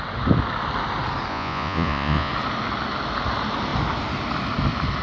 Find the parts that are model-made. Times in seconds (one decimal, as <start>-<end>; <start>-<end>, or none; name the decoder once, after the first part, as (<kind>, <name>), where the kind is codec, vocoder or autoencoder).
1.3-2.3 (vocoder, Vocos)